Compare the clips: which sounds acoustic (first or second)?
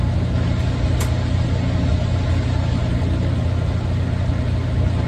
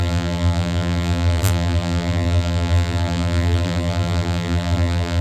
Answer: first